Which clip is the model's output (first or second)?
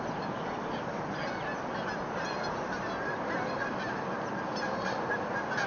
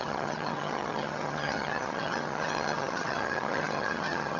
second